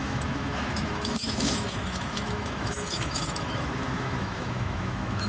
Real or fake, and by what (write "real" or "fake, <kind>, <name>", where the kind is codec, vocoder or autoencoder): fake, autoencoder, DAC-VAE